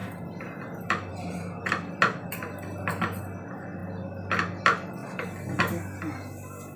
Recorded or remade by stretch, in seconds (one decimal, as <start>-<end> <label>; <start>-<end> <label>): 0.0-0.6 remade; 0.6-1.1 recorded; 1.1-1.6 remade; 1.6-6.8 recorded